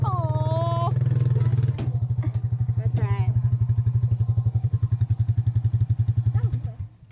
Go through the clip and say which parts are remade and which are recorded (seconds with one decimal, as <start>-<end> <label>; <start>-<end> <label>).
0.0-7.1 recorded